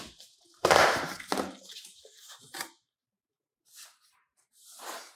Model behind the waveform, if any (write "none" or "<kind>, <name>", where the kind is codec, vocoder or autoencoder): vocoder, BigVGAN v2